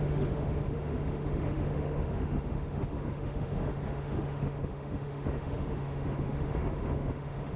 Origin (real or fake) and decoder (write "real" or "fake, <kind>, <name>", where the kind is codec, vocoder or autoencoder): fake, autoencoder, DAC-VAE